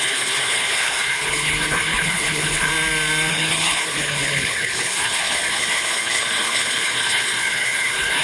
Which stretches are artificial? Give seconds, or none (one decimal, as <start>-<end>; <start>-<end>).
0.0-2.7; 3.3-8.2